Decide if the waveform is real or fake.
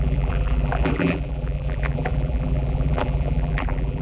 fake